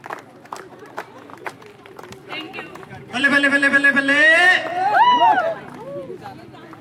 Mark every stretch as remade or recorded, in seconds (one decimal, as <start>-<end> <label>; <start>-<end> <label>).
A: 0.0-1.3 recorded; 1.3-5.4 remade; 5.4-6.8 recorded